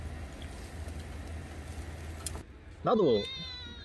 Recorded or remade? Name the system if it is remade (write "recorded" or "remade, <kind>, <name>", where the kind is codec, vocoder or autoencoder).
recorded